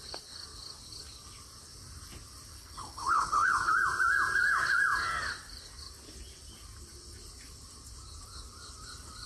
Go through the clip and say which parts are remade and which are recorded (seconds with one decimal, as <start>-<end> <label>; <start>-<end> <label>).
0.0-2.5 recorded; 2.5-3.7 remade; 3.7-9.3 recorded